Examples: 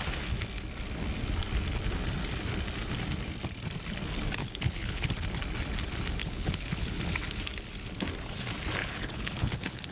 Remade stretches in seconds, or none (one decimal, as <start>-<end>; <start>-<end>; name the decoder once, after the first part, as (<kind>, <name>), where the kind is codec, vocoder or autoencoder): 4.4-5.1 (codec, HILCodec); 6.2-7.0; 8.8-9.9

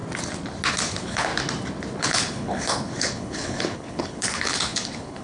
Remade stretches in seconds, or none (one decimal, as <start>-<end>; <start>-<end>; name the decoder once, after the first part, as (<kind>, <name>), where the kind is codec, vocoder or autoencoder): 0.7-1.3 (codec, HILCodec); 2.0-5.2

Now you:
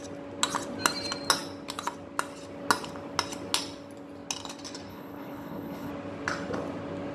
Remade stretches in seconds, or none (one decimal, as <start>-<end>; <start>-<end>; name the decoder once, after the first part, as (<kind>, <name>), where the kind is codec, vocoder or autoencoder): 4.9-5.9 (codec, HILCodec)

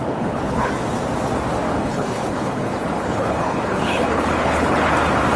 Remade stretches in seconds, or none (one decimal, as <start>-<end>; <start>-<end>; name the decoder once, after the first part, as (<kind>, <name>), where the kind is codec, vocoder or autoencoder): 0.0-0.7 (codec, HILCodec); 1.7-4.9

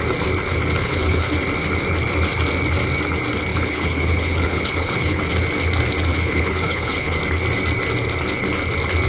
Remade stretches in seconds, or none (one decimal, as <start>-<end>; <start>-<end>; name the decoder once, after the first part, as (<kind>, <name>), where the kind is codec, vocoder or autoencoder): 0.8-1.3 (codec, HILCodec); 3.5-5.2; 6.1-7.2

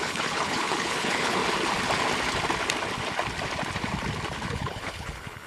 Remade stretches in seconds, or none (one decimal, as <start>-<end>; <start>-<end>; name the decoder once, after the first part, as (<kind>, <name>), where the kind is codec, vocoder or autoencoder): 0.0-1.4 (codec, HILCodec); 4.5-5.5

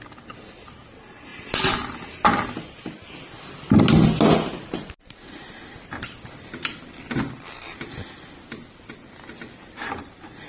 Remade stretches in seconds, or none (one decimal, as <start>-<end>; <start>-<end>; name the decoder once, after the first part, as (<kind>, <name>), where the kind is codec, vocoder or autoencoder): none